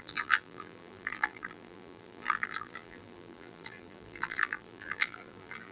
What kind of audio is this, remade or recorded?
remade